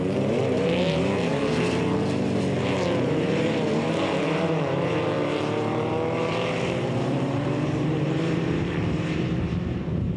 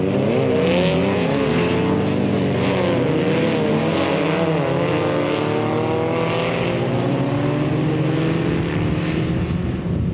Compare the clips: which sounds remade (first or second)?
first